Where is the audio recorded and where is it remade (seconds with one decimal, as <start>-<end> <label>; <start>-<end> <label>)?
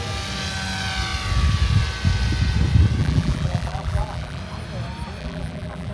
0.0-3.0 recorded; 3.0-4.4 remade; 4.4-5.2 recorded; 5.2-5.9 remade